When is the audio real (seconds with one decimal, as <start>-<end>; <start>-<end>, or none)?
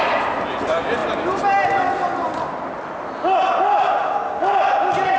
0.0-5.2